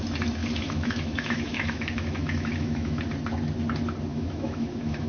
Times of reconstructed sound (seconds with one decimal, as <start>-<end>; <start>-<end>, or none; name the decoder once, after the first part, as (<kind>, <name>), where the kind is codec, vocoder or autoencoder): 0.4-3.0 (autoencoder, DAC-VAE); 4.1-5.1